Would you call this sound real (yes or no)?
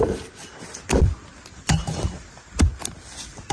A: yes